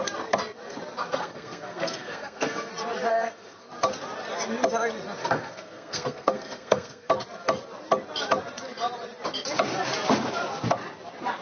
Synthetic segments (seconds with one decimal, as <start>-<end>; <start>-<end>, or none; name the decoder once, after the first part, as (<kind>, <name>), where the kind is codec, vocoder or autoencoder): 1.1-2.7 (codec, SNAC); 3.1-3.7; 5.2-7.1